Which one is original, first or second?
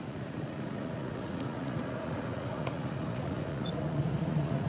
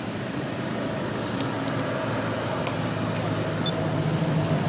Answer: second